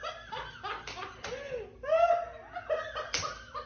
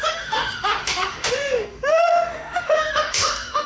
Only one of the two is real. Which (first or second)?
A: first